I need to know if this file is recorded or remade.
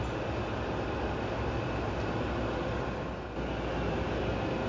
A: recorded